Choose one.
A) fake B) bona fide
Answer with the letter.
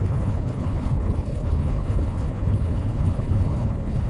A